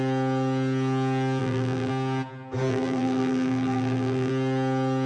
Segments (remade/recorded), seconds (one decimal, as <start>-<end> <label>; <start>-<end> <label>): 0.0-1.4 recorded; 1.4-1.9 remade; 1.9-2.7 recorded; 2.7-4.3 remade; 4.3-5.1 recorded